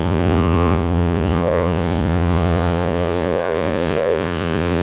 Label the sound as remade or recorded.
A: remade